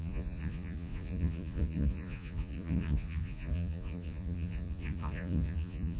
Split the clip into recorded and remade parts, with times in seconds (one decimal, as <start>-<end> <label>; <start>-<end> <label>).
0.0-6.0 remade